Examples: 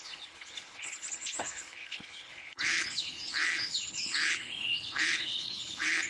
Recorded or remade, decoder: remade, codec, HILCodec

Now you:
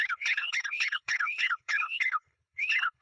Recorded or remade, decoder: remade, codec, HILCodec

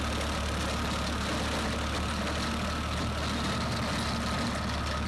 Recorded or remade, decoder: recorded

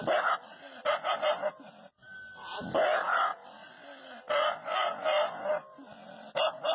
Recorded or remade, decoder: recorded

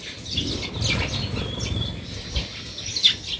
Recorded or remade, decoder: recorded